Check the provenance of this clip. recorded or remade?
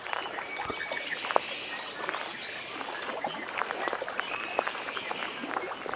recorded